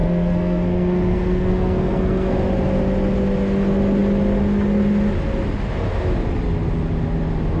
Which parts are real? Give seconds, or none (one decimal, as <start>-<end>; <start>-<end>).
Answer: 2.4-7.6